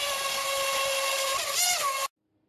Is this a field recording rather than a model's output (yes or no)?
yes